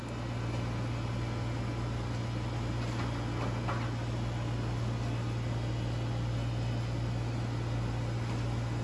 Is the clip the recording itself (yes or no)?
yes